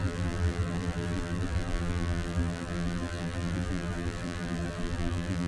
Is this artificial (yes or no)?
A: yes